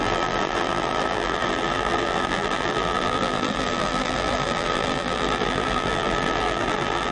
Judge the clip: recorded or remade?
remade